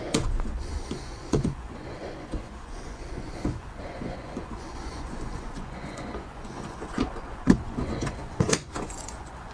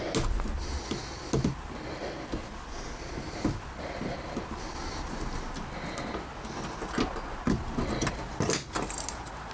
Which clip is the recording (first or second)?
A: second